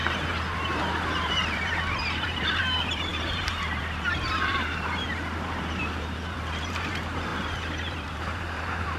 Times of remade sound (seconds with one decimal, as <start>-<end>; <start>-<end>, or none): 0.0-9.0